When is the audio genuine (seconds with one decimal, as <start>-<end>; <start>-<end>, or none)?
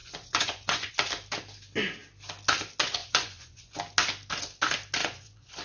0.9-3.0; 3.7-5.0